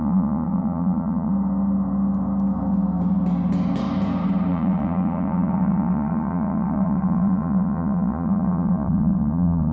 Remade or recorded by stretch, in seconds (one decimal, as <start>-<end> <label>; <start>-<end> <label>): 0.0-1.3 remade; 1.3-4.5 recorded; 4.5-9.7 remade